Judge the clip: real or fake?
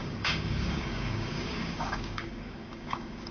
fake